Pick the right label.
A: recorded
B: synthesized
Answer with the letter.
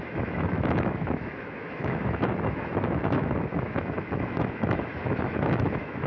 B